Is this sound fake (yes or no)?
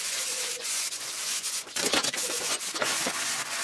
yes